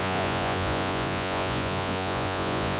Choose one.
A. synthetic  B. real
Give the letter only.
A